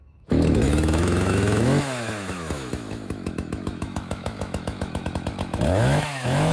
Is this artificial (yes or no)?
yes